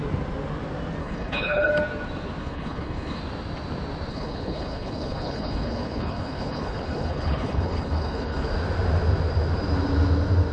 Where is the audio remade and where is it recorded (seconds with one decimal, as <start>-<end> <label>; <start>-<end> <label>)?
0.0-1.0 recorded; 1.0-1.7 remade; 1.7-2.4 recorded; 2.4-3.2 remade; 3.2-4.1 recorded; 4.1-8.5 remade; 8.5-10.5 recorded